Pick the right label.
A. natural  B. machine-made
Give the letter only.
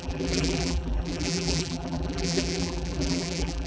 B